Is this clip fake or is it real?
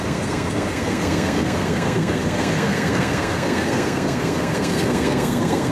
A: fake